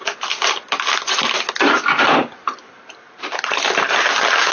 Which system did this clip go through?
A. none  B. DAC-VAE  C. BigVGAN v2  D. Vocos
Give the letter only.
A